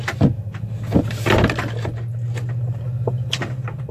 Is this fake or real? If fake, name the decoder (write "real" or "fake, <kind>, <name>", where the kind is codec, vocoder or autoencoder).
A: real